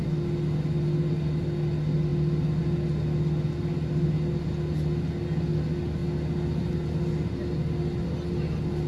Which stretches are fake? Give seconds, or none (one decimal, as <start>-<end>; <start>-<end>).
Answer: none

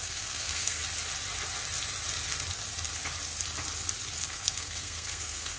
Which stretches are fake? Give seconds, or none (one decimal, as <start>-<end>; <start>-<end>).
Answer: 0.0-0.8; 4.2-5.6

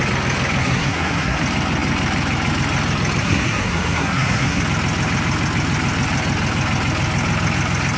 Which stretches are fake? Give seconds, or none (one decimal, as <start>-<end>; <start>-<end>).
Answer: 0.6-1.4; 3.2-4.6

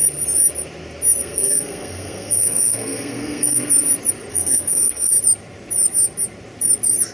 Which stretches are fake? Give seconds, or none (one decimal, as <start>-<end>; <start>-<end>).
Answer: 1.2-3.7; 4.3-5.1

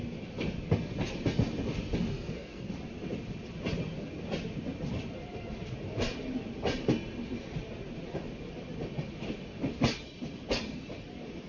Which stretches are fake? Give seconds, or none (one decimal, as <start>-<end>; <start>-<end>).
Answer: 2.1-2.7

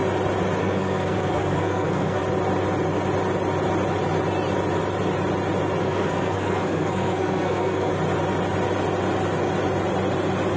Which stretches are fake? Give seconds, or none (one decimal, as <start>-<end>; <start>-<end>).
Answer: 0.6-2.2; 5.8-7.9